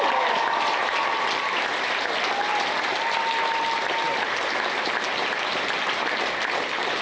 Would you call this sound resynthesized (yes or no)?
no